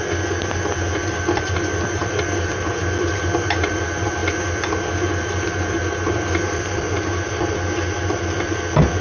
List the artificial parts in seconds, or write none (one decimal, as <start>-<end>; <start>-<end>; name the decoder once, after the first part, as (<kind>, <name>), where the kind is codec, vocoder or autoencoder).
none